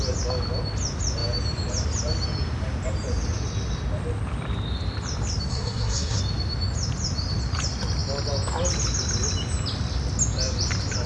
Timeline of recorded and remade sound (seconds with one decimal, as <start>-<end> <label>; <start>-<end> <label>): 0.0-5.5 recorded; 5.5-6.2 remade; 6.2-11.1 recorded